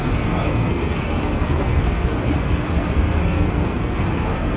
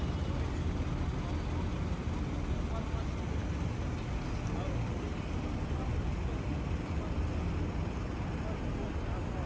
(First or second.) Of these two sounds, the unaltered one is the second